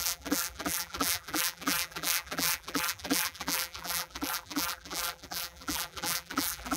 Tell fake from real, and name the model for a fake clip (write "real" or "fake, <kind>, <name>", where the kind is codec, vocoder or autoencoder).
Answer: fake, vocoder, BigVGAN v2